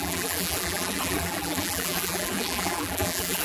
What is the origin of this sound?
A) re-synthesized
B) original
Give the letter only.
A